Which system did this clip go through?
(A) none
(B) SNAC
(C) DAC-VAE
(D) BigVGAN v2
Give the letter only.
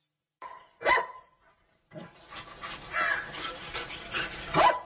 D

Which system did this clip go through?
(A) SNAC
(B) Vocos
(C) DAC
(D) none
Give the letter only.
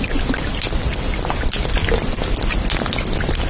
D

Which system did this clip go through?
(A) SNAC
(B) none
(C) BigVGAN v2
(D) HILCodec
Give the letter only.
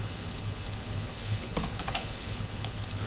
D